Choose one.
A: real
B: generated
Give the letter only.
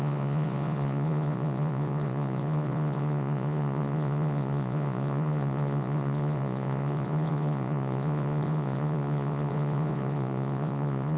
B